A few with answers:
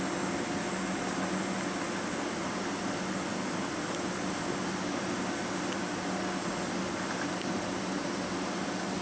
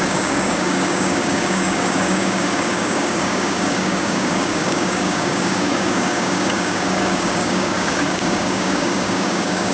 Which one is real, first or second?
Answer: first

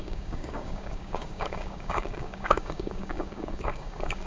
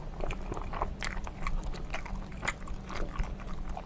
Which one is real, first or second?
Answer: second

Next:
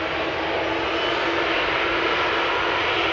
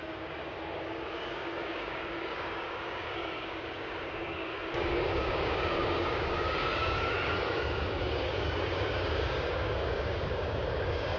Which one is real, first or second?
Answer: first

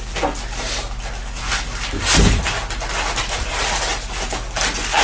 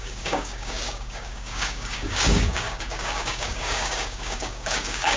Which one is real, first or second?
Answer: first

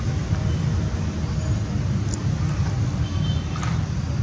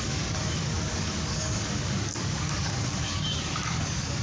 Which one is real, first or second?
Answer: first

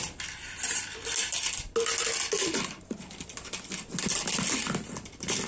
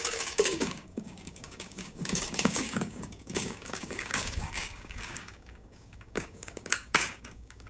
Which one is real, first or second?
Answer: first